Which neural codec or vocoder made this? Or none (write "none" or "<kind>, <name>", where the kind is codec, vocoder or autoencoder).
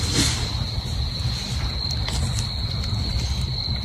none